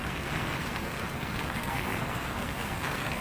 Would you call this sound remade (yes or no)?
yes